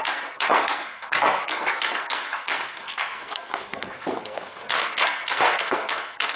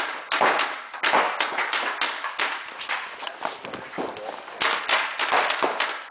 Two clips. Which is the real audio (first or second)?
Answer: second